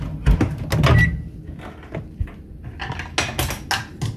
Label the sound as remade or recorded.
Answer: recorded